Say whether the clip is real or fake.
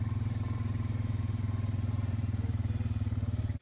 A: fake